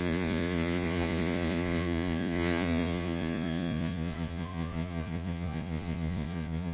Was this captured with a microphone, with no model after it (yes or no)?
no